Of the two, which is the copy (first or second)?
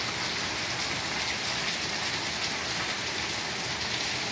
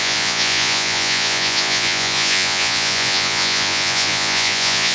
second